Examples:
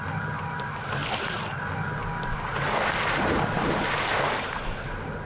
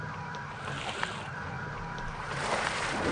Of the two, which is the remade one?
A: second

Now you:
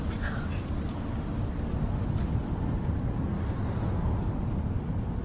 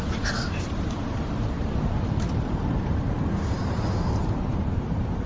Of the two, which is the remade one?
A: second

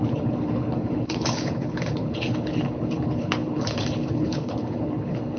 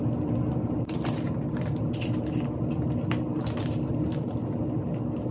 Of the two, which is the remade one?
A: first